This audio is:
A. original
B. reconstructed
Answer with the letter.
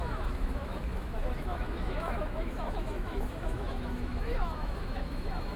B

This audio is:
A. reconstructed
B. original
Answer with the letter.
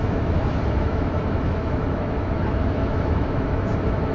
A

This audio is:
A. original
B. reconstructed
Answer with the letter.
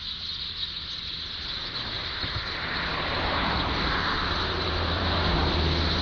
B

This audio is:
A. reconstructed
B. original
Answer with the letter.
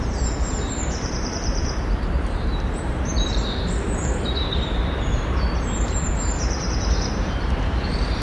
A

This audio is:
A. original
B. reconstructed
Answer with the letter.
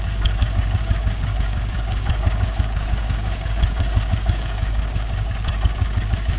B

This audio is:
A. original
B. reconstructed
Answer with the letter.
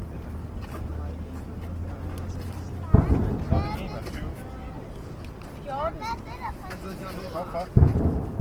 A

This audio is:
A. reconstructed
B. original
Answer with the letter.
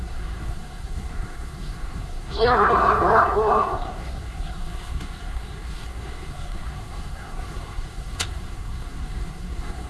A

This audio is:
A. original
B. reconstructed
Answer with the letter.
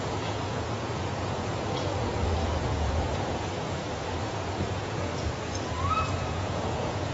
B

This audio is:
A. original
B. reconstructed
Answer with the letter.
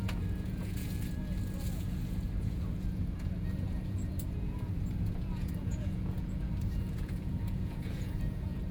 B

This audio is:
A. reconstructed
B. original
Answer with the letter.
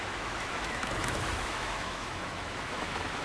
A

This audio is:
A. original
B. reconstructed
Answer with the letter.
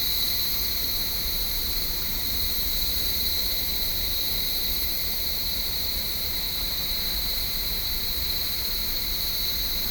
B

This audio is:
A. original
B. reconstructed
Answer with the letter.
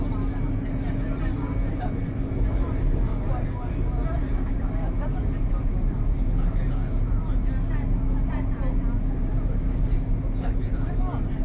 A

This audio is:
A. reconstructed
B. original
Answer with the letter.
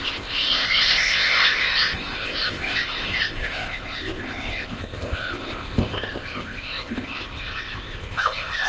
A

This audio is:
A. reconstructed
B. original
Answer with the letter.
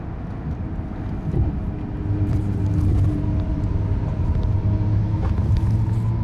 B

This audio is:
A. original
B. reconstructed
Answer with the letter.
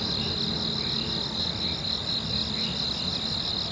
A